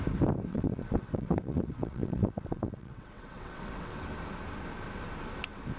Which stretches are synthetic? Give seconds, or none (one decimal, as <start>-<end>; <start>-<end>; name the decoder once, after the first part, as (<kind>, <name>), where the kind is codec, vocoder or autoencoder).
0.5-4.0 (vocoder, WaveNeXt)